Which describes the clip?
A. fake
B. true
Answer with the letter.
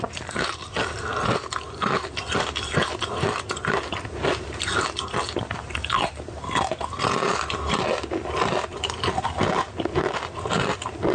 B